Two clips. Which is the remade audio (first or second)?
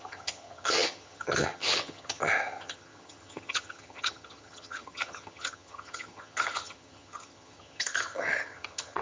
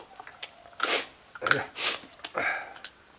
first